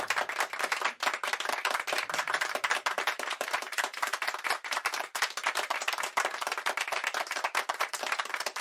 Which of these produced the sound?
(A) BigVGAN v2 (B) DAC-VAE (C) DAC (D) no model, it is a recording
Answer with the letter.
A